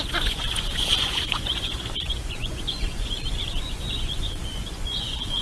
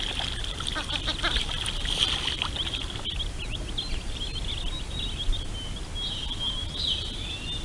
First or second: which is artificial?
first